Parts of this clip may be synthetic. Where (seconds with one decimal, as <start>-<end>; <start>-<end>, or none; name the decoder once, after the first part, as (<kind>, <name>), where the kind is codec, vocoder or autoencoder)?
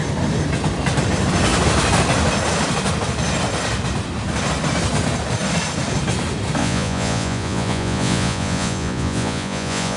6.6-10.0 (vocoder, Vocos)